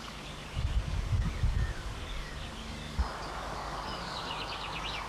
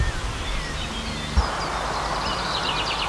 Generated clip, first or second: first